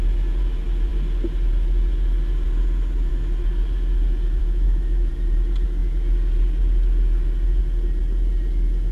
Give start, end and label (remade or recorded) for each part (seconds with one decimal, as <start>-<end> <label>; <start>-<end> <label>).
0.0-4.4 recorded; 4.4-5.1 remade; 5.1-8.9 recorded